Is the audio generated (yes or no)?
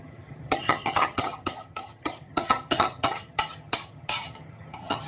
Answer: yes